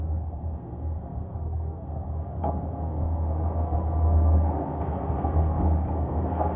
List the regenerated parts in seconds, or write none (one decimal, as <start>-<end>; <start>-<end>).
0.0-6.6